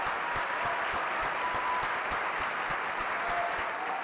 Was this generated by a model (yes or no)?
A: no